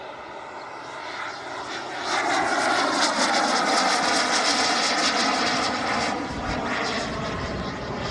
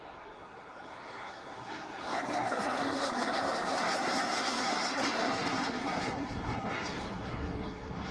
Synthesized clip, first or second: second